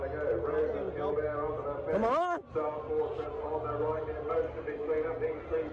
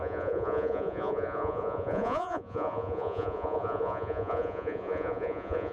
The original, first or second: first